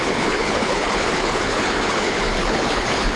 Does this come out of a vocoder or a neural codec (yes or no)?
yes